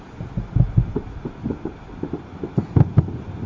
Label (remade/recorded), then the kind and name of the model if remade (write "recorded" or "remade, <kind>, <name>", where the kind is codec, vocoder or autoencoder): recorded